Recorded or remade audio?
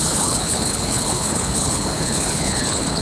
remade